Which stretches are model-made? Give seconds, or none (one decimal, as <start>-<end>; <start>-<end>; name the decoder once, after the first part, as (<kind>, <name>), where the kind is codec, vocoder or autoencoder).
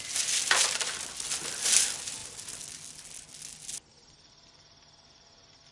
0.0-2.2 (vocoder, BigVGAN v2); 4.3-5.7